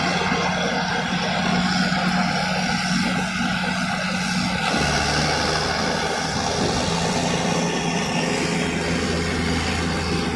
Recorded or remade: recorded